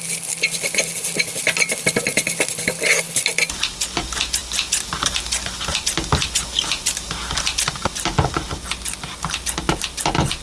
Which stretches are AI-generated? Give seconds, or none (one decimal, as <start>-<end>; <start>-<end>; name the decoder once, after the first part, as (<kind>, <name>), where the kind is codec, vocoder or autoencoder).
none